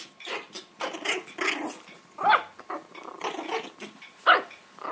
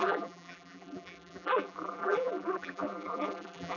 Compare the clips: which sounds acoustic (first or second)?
first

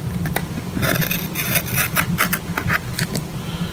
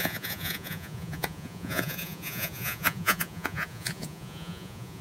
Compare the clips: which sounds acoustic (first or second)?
first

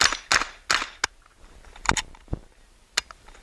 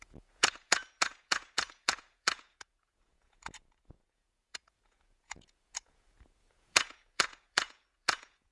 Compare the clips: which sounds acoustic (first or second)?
first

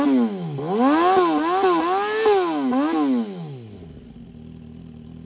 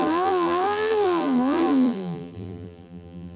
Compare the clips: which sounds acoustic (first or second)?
first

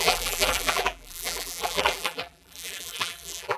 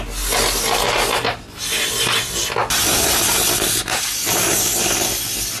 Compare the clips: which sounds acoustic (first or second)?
second